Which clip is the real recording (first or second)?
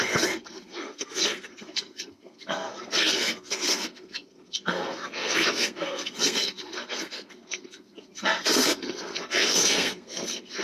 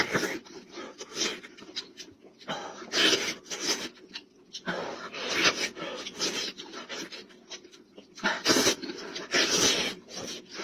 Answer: second